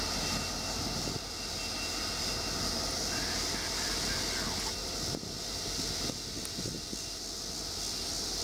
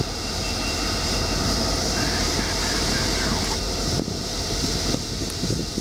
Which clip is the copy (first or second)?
second